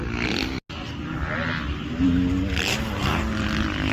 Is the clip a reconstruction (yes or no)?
no